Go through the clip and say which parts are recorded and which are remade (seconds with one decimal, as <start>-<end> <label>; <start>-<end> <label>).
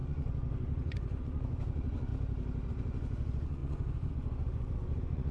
0.0-2.1 remade; 2.1-2.7 recorded; 2.7-5.3 remade